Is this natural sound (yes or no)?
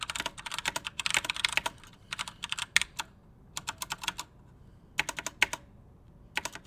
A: yes